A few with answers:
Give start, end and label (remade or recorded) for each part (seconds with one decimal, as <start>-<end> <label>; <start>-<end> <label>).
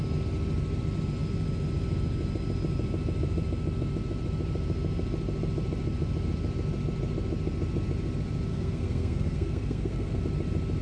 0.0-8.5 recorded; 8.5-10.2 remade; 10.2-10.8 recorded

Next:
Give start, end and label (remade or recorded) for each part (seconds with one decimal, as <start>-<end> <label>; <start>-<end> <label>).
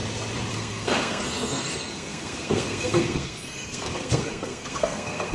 0.0-0.5 recorded; 0.5-5.3 remade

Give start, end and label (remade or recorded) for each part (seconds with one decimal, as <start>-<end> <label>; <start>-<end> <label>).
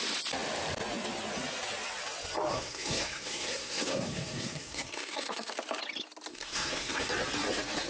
0.0-2.5 recorded; 2.5-5.5 remade; 5.5-6.3 recorded; 6.3-7.1 remade; 7.1-7.9 recorded